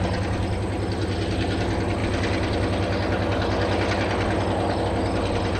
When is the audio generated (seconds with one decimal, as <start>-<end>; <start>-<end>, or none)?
none